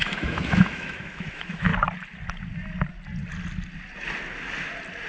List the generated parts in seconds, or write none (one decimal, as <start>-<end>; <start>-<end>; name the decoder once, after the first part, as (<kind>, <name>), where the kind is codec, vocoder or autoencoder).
0.0-1.7 (autoencoder, DAC-VAE)